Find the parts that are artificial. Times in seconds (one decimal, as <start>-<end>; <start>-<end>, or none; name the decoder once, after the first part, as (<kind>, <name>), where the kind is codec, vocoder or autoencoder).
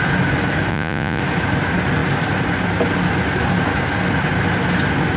0.7-1.2 (vocoder, Vocos)